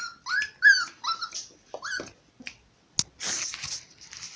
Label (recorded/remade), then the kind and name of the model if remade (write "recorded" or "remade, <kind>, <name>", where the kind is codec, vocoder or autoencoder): recorded